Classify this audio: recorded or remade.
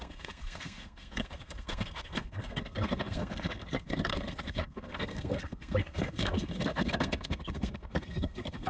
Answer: remade